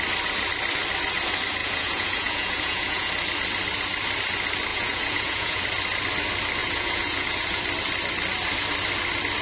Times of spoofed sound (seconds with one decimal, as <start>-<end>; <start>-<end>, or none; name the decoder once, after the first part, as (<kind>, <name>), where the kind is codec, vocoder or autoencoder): 1.6-3.1 (vocoder, Vocos); 4.7-5.6; 6.6-7.6